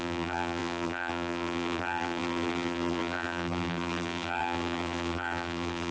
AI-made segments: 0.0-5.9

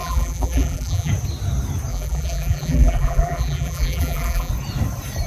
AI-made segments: 0.0-1.1; 1.9-4.5

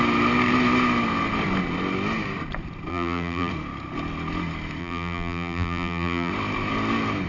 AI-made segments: 2.9-3.5; 4.8-6.3

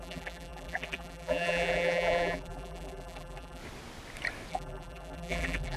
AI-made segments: 0.0-3.6; 4.5-5.8

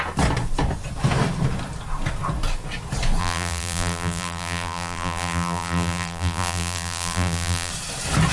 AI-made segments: 3.2-7.7

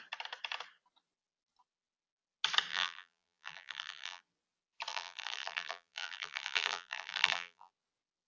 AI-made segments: 2.7-4.2; 4.9-7.7

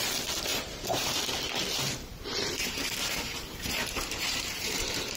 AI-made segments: 0.5-1.2; 2.1-5.2